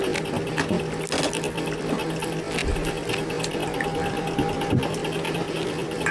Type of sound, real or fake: real